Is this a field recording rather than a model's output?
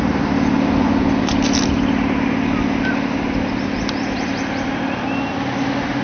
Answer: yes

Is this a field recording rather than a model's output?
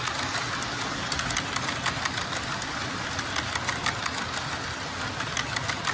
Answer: yes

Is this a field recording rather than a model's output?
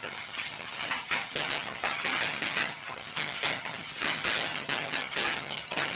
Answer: no